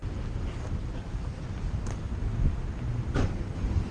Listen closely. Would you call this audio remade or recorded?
recorded